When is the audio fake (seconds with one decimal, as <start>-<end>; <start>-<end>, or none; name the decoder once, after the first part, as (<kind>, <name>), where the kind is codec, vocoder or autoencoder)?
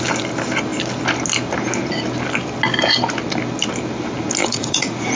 4.4-5.2 (vocoder, Vocos)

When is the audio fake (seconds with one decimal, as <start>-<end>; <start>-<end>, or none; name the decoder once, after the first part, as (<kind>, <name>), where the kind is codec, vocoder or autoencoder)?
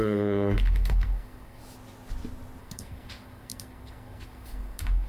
0.0-1.6 (codec, SNAC); 2.6-5.1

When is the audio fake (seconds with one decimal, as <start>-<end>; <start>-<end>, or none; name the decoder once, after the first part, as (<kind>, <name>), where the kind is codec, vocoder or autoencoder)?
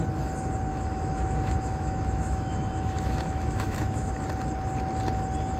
0.7-4.1 (autoencoder, DAC-VAE)